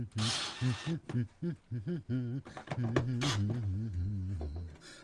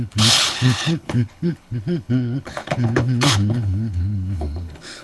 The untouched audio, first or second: first